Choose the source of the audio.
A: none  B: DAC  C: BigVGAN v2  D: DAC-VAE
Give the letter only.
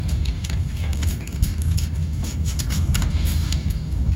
B